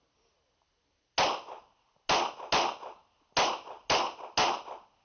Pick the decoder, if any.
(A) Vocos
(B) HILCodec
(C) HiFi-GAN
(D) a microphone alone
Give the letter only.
D